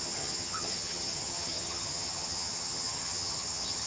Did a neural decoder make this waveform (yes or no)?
yes